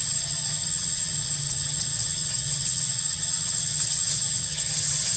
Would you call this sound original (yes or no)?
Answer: no